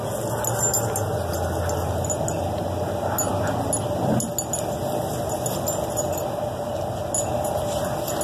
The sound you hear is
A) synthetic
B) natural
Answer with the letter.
B